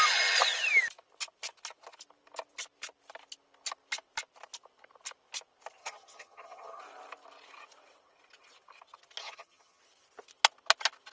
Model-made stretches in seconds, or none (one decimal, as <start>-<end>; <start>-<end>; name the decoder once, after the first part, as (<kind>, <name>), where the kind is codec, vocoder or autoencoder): 5.8-6.8 (vocoder, HiFi-GAN); 9.2-9.8